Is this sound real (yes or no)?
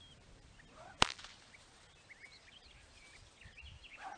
yes